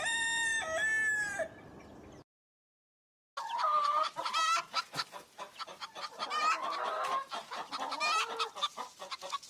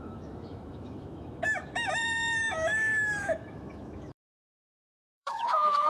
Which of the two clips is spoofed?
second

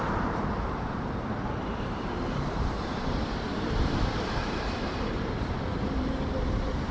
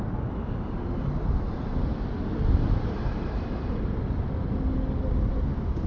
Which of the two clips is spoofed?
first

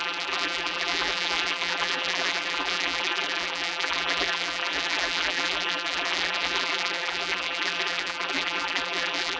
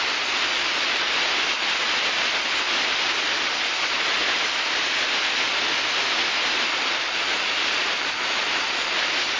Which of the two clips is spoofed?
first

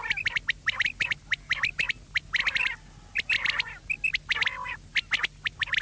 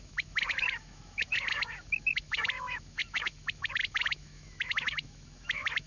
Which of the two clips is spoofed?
second